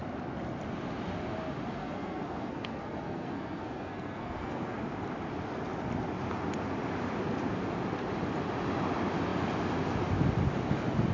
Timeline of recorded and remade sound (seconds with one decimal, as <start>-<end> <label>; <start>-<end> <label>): 0.0-1.8 recorded; 1.8-4.8 remade; 4.8-11.1 recorded